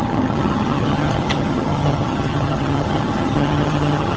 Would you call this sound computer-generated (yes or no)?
yes